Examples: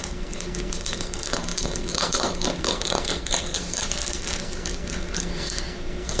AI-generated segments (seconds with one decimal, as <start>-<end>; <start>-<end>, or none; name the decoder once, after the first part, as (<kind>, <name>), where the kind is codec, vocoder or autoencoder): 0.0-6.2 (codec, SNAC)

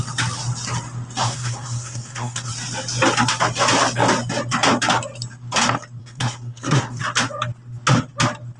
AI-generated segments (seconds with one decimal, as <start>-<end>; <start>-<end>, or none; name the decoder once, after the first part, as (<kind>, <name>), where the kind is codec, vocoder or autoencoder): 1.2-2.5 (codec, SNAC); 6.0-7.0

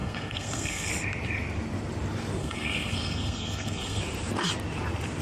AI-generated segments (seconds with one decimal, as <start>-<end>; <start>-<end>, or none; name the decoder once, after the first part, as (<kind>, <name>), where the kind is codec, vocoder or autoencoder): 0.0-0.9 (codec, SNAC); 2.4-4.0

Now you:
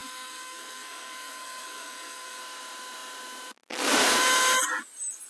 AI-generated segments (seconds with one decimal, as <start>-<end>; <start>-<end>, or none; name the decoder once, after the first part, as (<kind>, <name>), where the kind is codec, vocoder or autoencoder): 0.0-2.4 (codec, SNAC)

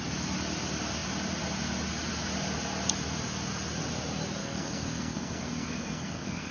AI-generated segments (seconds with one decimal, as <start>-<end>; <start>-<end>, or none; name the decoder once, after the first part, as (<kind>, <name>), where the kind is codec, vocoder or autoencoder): 4.4-6.5 (codec, SNAC)

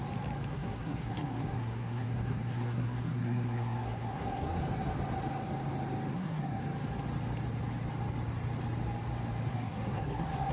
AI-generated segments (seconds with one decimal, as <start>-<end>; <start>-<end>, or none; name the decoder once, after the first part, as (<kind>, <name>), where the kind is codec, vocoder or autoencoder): 0.5-4.6 (codec, SNAC); 6.1-6.6; 9.5-10.5

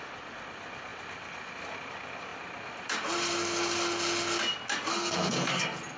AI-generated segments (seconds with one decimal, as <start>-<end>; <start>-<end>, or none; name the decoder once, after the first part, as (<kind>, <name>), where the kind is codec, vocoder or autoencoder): 4.9-5.6 (codec, SNAC)

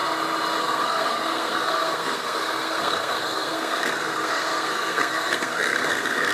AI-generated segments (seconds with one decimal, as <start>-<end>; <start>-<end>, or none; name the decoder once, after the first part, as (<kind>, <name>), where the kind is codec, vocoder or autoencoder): 0.6-6.3 (codec, SNAC)